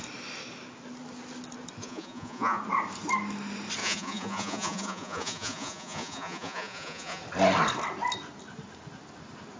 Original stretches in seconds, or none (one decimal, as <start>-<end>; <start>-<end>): 0.0-1.8; 2.6-3.8; 7.2-9.6